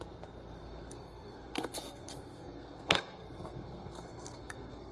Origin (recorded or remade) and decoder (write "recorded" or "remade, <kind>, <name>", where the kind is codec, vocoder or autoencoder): remade, codec, SNAC